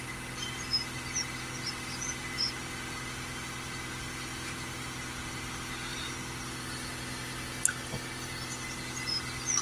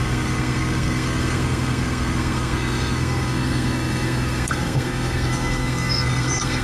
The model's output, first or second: second